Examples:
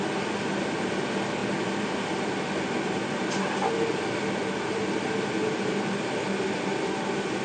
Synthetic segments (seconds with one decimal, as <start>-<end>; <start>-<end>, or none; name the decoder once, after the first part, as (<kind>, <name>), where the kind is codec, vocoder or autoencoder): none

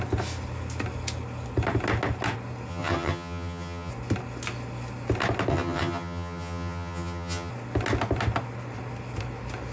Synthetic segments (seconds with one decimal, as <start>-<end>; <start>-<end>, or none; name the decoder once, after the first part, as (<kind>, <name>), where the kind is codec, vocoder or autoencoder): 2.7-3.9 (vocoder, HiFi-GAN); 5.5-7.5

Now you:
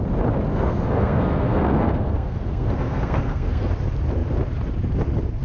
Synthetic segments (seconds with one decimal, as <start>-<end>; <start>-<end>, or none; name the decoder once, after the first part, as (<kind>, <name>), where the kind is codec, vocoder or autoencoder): 0.5-3.7 (codec, SNAC)

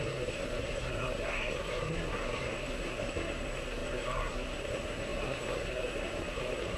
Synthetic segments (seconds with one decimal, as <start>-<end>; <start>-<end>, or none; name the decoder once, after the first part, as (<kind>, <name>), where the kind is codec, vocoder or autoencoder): 0.0-6.8 (codec, SNAC)

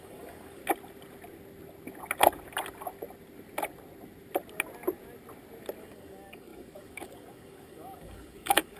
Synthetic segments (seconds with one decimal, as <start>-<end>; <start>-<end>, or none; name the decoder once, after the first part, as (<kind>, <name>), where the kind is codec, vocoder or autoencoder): 0.0-0.6 (codec, DAC); 5.8-8.8

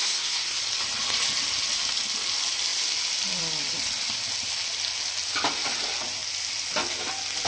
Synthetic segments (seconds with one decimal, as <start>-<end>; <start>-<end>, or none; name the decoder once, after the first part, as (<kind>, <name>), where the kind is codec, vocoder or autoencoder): 0.0-0.6 (codec, SNAC)

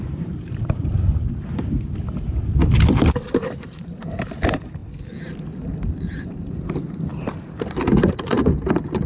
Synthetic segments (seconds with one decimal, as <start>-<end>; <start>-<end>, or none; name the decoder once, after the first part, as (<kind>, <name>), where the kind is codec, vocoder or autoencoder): 0.0-0.9 (vocoder, BigVGAN v2); 3.3-4.8; 5.5-9.1